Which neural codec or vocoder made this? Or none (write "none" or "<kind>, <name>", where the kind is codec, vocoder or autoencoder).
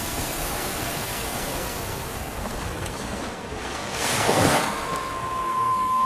codec, SNAC